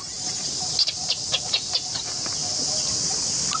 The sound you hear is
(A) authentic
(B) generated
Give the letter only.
A